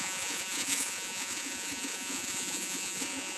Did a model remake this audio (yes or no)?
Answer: yes